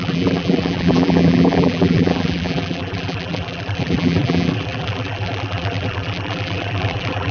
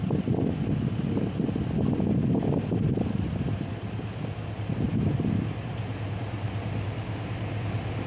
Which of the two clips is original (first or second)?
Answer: second